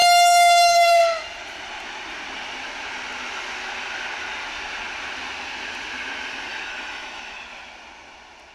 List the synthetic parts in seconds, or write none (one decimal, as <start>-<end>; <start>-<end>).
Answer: 0.0-1.0; 6.5-7.4